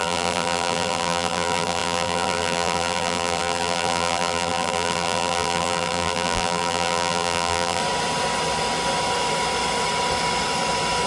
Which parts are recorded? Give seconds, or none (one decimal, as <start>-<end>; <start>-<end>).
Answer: 7.8-11.1